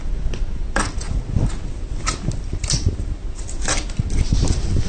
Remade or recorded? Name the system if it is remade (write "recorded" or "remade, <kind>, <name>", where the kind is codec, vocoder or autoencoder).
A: recorded